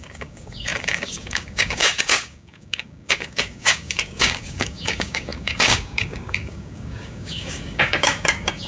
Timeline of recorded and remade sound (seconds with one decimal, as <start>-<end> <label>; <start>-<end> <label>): 0.0-8.7 remade